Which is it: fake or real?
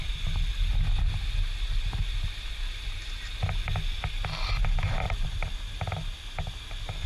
real